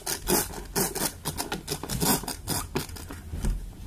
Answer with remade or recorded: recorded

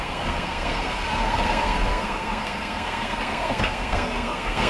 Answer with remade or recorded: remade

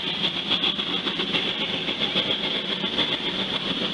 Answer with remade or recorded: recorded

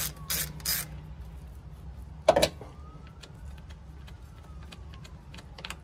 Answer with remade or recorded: recorded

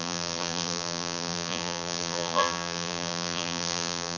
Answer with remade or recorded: remade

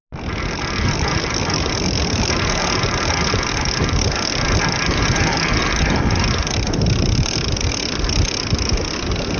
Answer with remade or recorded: recorded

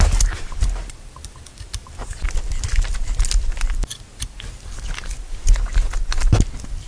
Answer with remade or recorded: recorded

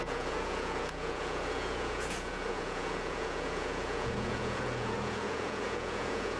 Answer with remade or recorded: remade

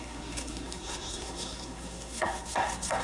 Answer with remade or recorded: remade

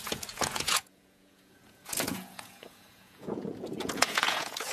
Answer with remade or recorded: remade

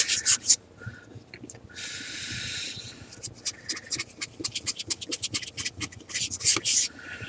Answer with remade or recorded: recorded